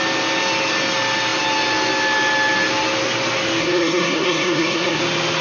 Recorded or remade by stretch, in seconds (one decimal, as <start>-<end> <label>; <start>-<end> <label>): 0.0-3.6 recorded; 3.6-5.0 remade; 5.0-5.4 recorded